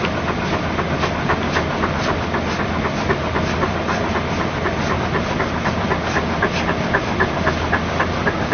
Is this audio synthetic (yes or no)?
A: no